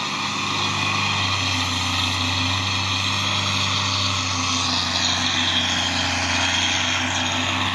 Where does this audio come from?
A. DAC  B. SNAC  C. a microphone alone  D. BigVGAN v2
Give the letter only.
C